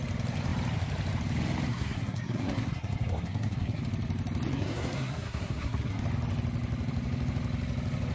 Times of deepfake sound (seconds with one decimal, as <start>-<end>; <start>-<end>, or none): 1.7-3.8; 4.5-6.0